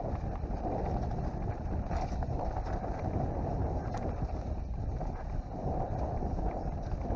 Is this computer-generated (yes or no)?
no